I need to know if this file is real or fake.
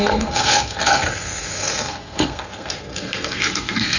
fake